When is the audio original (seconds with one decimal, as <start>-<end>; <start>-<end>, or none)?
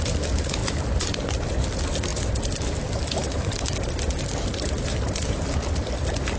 0.0-6.4